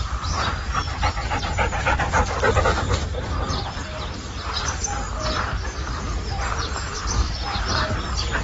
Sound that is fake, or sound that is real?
real